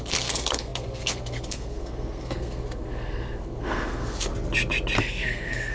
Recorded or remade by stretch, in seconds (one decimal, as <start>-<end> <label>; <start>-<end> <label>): 0.0-4.3 remade; 4.3-5.0 recorded; 5.0-5.7 remade